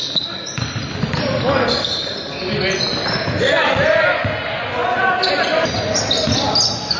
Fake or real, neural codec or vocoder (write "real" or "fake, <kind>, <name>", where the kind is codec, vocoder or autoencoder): real